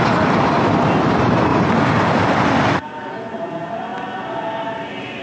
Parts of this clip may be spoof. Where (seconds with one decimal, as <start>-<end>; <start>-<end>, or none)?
1.5-2.4